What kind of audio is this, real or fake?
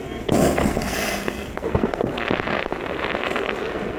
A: fake